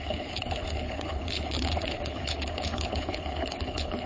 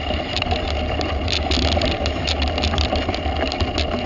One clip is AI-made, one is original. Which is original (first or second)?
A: second